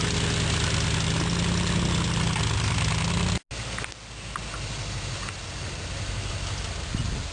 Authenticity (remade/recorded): recorded